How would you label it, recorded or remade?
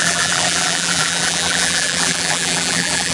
remade